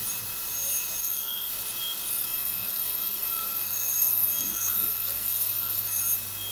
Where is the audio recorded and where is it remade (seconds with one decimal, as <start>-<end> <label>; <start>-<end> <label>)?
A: 0.0-1.0 recorded; 1.0-1.5 remade; 1.5-2.1 recorded; 2.1-6.0 remade; 6.0-6.5 recorded